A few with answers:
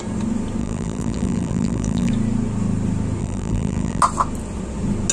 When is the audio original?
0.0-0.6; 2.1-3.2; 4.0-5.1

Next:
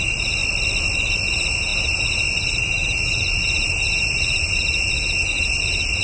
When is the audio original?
0.4-1.2